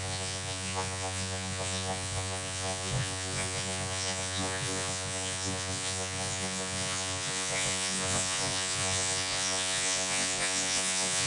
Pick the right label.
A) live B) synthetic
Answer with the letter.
B